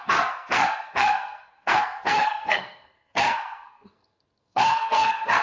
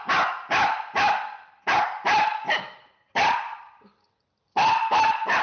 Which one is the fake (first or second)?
first